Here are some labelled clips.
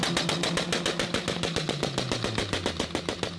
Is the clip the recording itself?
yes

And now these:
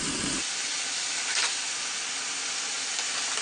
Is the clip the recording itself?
yes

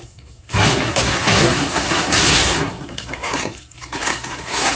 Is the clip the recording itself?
no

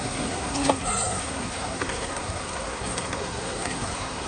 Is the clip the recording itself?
no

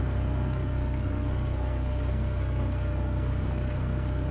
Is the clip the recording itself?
no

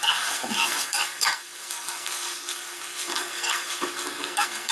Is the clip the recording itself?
no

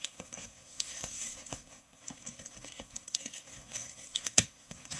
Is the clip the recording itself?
no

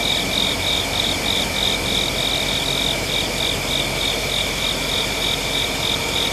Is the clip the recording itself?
yes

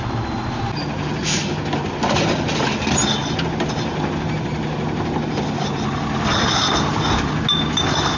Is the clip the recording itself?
yes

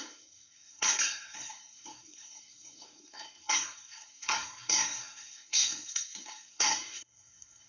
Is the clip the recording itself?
no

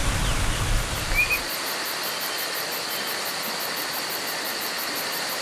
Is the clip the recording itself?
yes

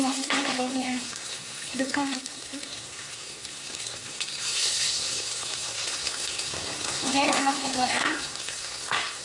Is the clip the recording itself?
no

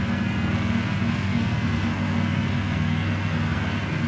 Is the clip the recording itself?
no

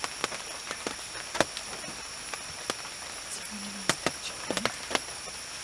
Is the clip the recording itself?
yes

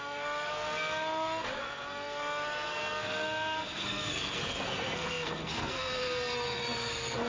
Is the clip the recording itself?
no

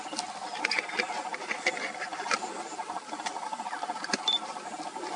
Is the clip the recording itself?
yes